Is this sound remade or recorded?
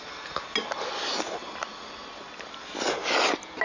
recorded